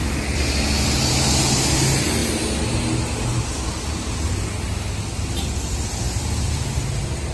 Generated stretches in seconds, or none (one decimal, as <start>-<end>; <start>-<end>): none

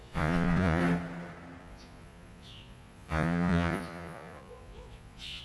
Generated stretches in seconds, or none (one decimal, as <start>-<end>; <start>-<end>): 0.0-0.8; 1.6-5.4

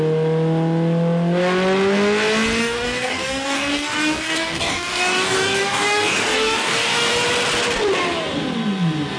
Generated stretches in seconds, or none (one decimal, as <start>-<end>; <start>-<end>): 2.6-7.1

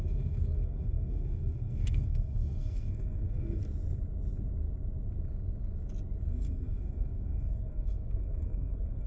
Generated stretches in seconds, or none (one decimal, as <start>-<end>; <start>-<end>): 0.0-3.6; 6.3-9.1

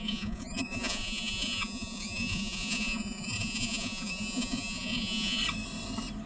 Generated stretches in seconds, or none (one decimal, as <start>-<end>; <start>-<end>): 0.0-5.4

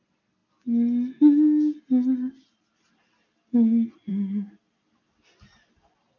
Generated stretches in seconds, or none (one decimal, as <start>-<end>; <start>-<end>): none

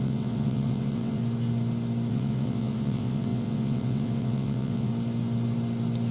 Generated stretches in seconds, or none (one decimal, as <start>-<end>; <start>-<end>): 0.0-1.2; 2.1-4.9

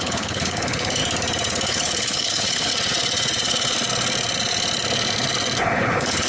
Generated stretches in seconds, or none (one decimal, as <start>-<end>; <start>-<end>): 0.0-1.0; 1.7-2.7; 5.6-6.3